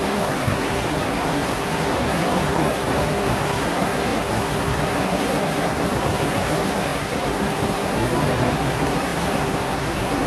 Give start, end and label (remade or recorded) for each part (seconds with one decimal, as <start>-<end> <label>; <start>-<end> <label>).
0.0-10.3 remade